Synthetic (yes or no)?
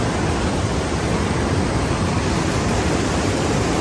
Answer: no